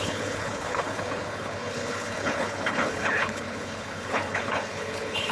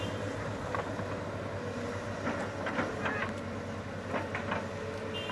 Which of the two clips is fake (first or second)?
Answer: first